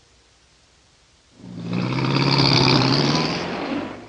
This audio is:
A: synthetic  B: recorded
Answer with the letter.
A